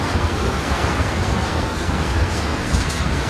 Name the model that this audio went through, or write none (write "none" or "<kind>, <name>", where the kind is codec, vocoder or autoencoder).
codec, SNAC